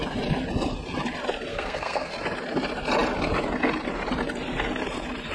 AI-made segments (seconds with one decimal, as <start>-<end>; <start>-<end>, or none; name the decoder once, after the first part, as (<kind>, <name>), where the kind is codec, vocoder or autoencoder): 1.5-2.1 (codec, SNAC)